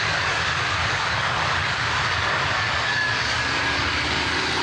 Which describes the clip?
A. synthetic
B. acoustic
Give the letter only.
A